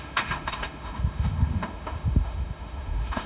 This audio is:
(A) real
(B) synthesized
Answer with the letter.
B